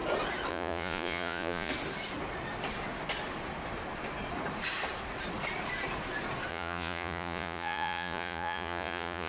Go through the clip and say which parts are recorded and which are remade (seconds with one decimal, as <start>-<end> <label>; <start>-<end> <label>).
0.0-0.5 recorded; 0.5-1.7 remade; 1.7-6.5 recorded; 6.5-9.3 remade